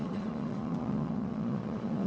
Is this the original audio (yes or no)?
no